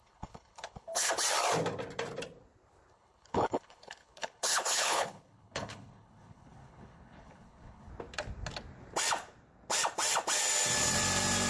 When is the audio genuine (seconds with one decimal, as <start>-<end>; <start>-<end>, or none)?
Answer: 1.1-2.9; 7.9-11.5